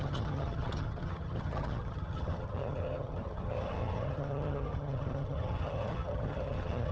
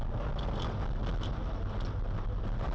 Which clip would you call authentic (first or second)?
second